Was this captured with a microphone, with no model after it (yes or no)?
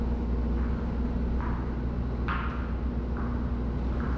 yes